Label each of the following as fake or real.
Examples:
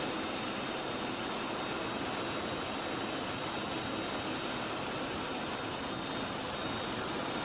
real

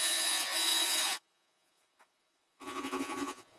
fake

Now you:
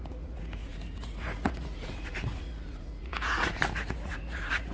fake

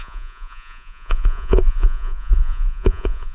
fake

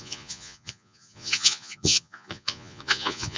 fake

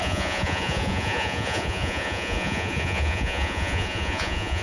fake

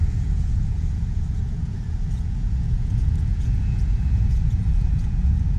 fake